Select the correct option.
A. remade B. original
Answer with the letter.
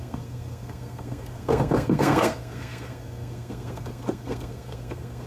A